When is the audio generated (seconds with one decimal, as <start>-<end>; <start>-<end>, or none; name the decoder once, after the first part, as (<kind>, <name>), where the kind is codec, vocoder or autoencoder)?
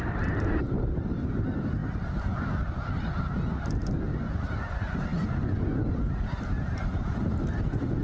none